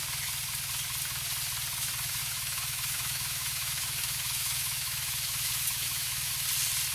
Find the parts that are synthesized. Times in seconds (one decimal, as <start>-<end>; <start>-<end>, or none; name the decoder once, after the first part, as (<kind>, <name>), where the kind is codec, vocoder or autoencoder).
2.2-6.3 (autoencoder, DAC-VAE)